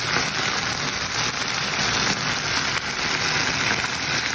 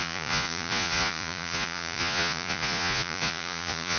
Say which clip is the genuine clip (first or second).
first